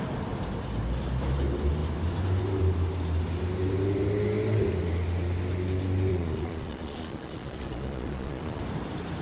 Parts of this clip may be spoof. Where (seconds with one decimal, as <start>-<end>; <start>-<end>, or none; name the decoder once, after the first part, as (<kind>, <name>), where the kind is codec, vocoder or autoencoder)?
6.1-8.6 (vocoder, Vocos)